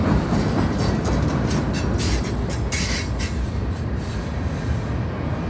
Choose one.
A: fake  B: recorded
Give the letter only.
B